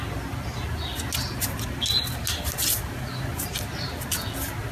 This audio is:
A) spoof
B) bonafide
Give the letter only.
B